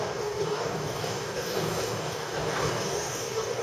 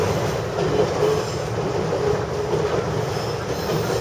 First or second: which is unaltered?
second